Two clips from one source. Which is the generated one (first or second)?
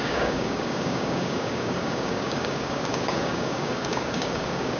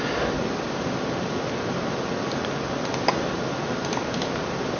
first